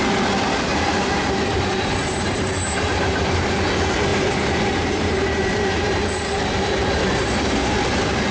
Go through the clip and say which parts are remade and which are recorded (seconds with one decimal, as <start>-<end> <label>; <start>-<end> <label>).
0.0-0.7 recorded; 0.7-3.4 remade; 3.4-4.1 recorded; 4.1-8.3 remade